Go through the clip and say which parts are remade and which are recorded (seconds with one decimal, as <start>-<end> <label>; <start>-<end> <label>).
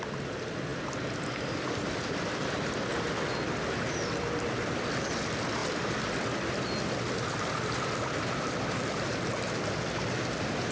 0.0-0.7 recorded; 0.7-2.7 remade; 2.7-5.6 recorded; 5.6-8.7 remade; 8.7-10.7 recorded